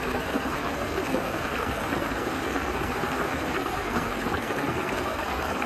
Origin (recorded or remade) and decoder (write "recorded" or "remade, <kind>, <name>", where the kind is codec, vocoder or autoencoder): remade, codec, SNAC